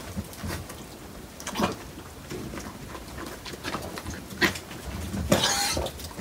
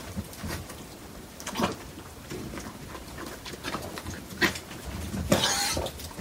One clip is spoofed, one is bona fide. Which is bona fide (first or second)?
first